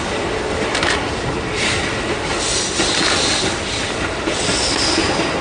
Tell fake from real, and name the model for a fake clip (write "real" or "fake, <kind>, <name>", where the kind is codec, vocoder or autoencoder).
real